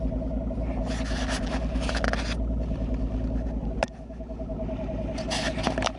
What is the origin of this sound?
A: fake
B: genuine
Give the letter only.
B